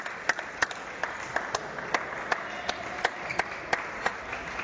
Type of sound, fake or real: real